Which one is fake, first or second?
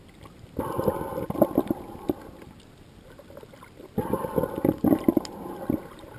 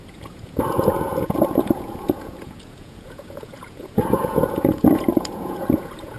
second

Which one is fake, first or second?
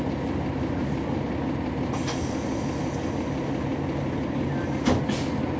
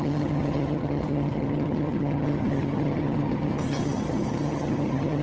second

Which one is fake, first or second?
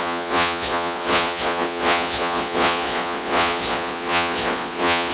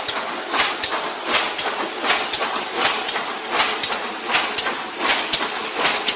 first